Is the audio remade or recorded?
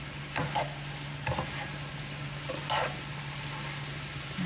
recorded